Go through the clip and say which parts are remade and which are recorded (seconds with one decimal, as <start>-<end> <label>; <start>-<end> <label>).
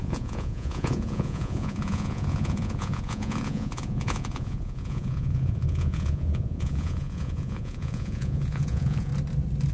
0.0-9.1 remade; 9.1-9.7 recorded